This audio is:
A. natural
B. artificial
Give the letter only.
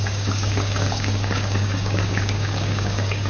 B